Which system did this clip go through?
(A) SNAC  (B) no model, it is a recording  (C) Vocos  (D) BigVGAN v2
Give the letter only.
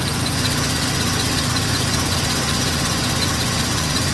C